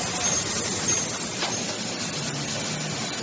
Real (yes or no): yes